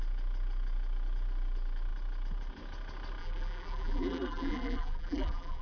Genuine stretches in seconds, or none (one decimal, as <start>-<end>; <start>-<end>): 0.0-3.2